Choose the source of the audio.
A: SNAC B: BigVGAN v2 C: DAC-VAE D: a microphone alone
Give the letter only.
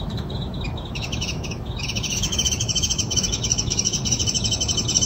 C